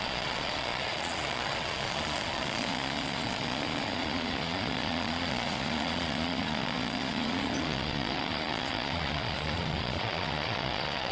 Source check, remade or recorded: remade